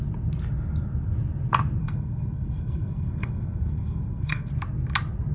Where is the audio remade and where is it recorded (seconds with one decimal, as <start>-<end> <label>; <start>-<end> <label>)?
0.0-1.8 recorded; 1.8-4.5 remade; 4.5-5.3 recorded